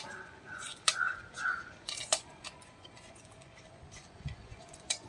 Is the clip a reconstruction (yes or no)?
yes